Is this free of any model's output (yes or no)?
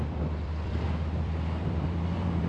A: no